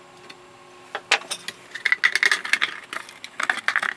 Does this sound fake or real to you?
real